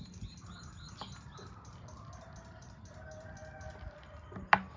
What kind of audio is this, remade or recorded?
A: recorded